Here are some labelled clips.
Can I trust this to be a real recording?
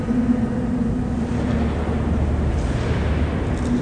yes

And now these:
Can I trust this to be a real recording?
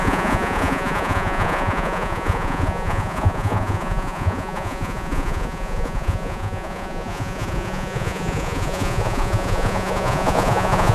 no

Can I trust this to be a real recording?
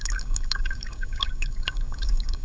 no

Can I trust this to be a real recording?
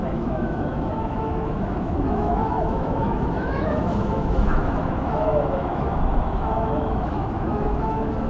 no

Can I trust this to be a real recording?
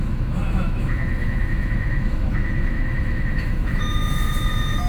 no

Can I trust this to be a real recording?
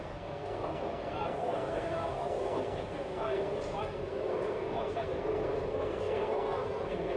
no